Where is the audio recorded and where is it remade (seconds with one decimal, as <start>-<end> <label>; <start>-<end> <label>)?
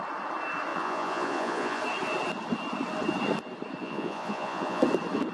0.0-0.7 recorded; 0.7-1.8 remade; 1.8-3.8 recorded; 3.8-4.8 remade; 4.8-5.3 recorded